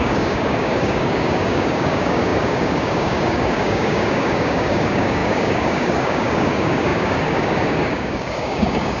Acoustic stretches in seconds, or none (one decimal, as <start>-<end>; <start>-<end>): none